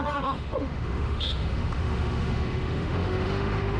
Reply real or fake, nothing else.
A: fake